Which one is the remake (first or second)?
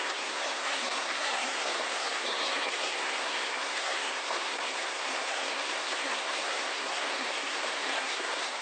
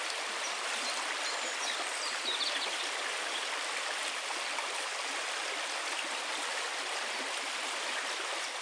first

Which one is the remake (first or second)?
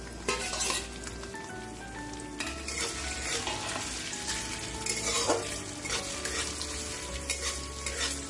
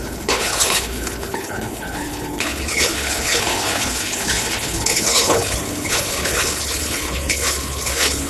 second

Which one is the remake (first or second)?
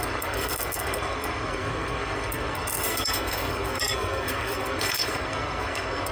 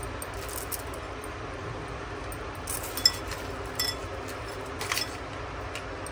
first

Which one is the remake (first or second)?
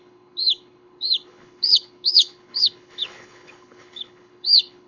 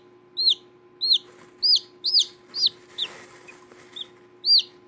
first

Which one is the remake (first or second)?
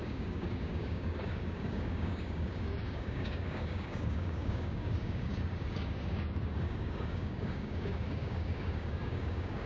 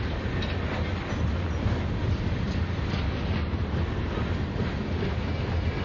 first